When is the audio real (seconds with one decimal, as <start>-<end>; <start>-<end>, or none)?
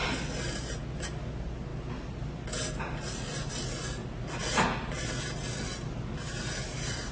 0.0-7.1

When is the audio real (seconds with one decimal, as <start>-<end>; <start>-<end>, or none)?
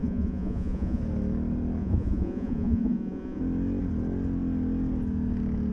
1.0-1.8; 3.4-5.7